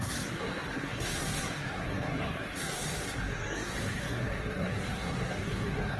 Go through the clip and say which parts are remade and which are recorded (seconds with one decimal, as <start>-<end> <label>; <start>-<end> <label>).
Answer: 0.0-6.0 remade